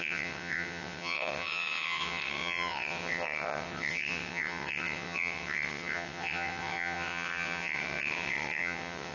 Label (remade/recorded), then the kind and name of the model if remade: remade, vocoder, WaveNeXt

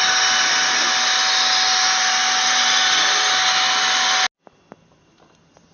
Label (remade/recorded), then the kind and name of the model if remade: recorded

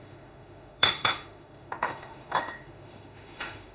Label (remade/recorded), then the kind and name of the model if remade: remade, autoencoder, DAC-VAE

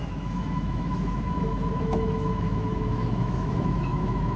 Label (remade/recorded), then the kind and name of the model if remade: remade, autoencoder, DAC-VAE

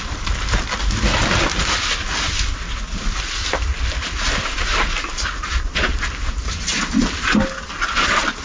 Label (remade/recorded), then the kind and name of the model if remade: recorded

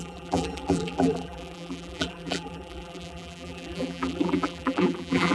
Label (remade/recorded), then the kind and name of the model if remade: remade, vocoder, BigVGAN v2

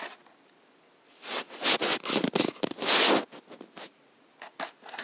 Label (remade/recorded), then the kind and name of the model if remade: recorded